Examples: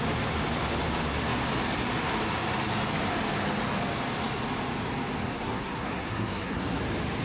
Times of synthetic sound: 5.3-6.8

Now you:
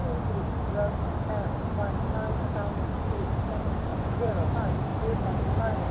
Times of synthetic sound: 3.9-4.5

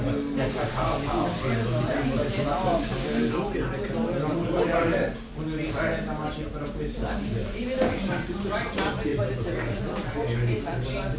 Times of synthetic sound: 7.4-8.1

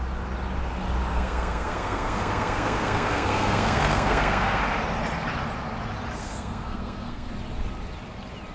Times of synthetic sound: 1.1-4.6; 6.2-7.3